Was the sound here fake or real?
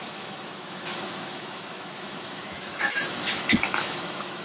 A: fake